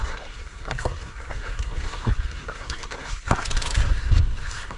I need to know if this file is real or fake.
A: fake